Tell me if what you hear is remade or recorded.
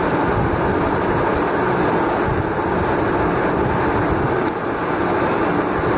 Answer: recorded